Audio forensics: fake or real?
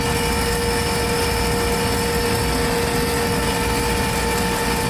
real